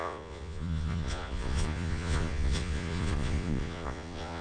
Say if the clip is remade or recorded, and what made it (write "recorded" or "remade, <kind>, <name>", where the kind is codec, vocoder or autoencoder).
remade, vocoder, Vocos